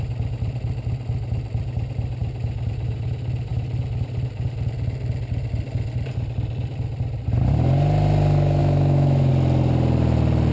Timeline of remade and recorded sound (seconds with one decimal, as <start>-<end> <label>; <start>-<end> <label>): 0.0-8.6 recorded; 8.6-9.3 remade; 9.3-10.5 recorded